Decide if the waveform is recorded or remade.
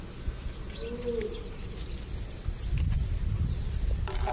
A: recorded